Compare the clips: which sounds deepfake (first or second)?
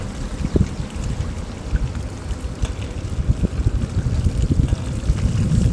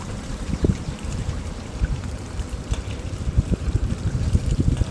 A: second